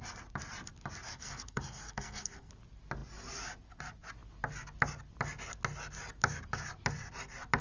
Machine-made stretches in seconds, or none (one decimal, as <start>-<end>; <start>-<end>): 1.1-2.5